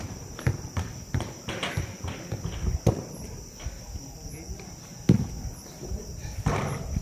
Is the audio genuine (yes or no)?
yes